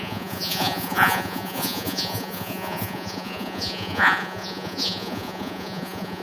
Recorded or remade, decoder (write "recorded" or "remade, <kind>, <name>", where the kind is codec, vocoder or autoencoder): remade, vocoder, Vocos